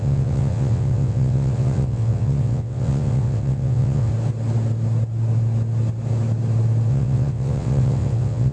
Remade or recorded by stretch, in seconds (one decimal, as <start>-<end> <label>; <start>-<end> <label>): 0.0-4.1 remade; 4.1-6.9 recorded; 6.9-8.5 remade